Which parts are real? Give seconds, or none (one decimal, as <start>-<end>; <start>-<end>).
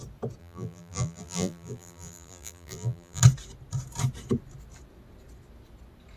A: 0.0-0.4; 3.2-6.2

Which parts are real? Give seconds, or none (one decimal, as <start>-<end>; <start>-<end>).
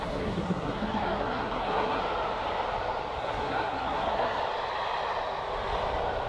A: 2.0-3.2; 4.4-6.3